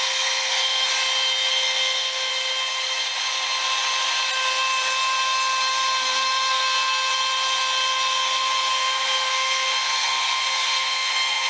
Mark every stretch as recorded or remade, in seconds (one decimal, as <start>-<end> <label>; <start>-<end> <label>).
0.0-0.9 remade; 0.9-1.5 recorded; 1.5-2.3 remade; 2.3-6.5 recorded; 6.5-7.1 remade; 7.1-8.7 recorded; 8.7-11.5 remade